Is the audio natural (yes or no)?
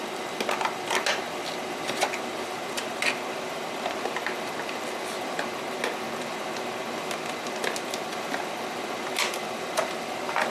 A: yes